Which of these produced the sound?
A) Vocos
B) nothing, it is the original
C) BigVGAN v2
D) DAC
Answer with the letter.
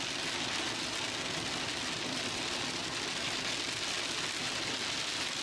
B